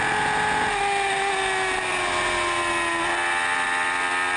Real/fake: real